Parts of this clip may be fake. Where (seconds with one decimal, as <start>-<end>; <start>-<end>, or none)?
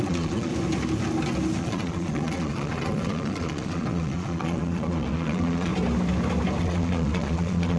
0.0-0.5; 1.6-5.7; 6.6-7.8